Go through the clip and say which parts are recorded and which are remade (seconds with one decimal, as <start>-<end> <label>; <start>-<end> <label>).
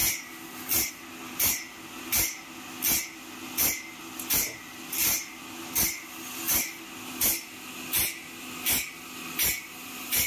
0.0-10.3 recorded